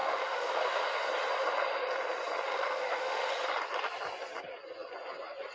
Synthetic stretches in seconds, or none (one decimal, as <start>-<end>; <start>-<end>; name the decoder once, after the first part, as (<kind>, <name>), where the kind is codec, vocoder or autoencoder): 0.0-0.8 (autoencoder, DAC-VAE); 2.5-3.3